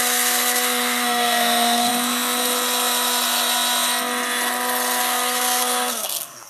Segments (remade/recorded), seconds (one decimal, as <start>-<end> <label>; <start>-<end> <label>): 0.0-1.9 remade; 1.9-5.0 recorded; 5.0-6.5 remade